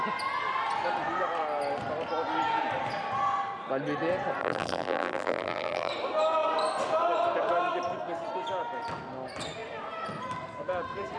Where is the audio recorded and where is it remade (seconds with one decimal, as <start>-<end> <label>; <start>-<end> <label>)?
0.0-4.4 recorded; 4.4-5.9 remade; 5.9-11.2 recorded